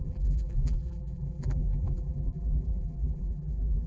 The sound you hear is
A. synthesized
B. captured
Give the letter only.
A